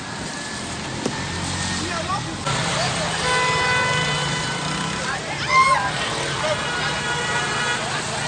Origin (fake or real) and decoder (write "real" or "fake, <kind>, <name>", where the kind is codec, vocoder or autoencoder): real